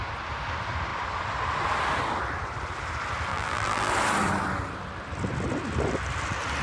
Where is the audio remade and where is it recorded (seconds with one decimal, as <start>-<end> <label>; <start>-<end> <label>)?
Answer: 0.0-3.3 recorded; 3.3-3.9 remade; 3.9-6.6 recorded